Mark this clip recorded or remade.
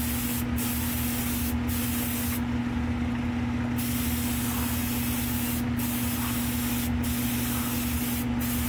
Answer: recorded